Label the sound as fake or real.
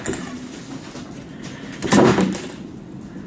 real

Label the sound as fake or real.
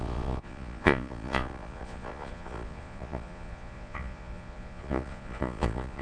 fake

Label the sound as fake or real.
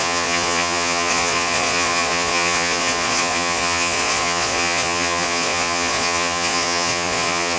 fake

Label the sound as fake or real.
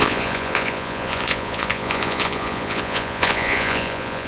fake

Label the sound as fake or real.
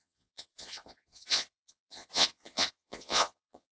fake